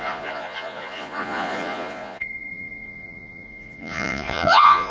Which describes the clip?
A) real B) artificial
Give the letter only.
B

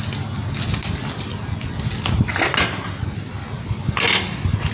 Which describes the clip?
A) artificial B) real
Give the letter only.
B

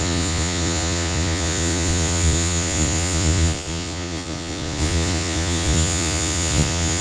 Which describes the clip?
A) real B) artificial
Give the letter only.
B